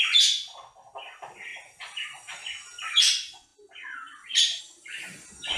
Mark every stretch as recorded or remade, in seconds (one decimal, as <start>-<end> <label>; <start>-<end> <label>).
0.0-5.6 recorded